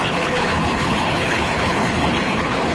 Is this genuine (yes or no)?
no